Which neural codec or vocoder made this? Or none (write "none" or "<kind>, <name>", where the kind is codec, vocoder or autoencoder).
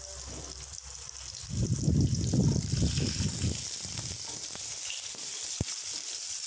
none